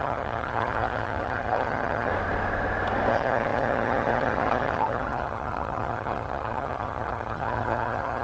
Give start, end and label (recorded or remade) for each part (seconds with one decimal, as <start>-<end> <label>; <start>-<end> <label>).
0.0-2.1 remade; 2.1-3.1 recorded; 3.1-8.2 remade